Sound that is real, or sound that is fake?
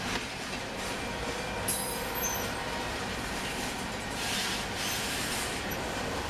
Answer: real